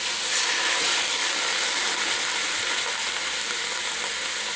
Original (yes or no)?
yes